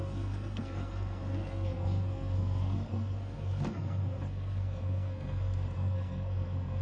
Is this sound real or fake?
fake